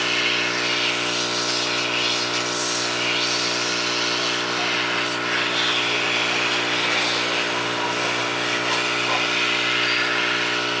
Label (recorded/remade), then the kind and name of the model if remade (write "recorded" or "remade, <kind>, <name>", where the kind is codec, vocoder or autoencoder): recorded